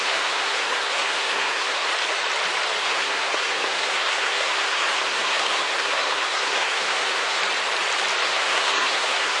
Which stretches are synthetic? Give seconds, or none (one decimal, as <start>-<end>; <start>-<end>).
0.0-1.9; 2.8-7.4; 8.2-9.4